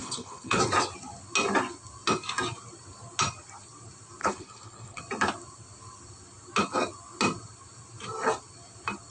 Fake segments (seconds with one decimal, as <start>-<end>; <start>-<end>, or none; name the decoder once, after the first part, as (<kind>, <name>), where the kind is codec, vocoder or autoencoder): 0.0-0.6 (codec, HILCodec); 4.2-5.0